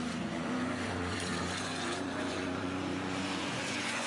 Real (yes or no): no